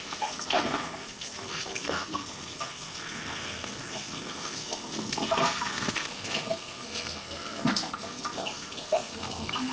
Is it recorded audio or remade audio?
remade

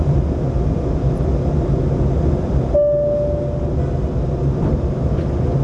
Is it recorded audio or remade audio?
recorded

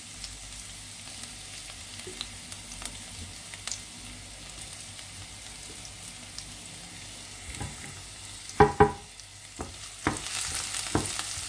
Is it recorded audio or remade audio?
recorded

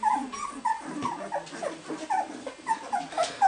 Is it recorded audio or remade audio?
recorded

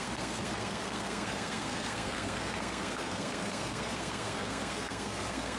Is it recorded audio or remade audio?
remade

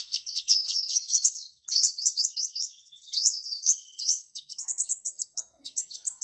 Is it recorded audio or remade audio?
remade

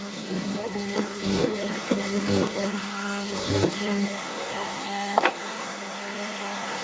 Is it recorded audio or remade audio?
remade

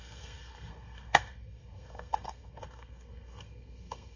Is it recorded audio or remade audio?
remade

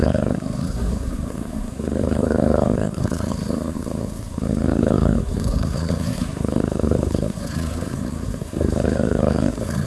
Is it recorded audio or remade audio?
remade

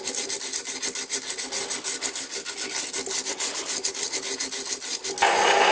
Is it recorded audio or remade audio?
recorded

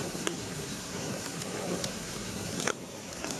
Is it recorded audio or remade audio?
remade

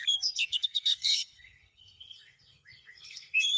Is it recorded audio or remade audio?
remade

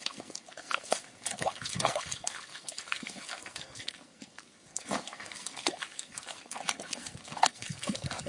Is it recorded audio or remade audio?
remade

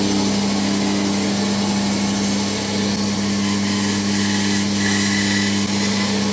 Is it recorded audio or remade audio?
recorded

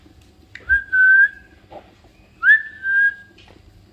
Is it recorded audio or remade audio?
recorded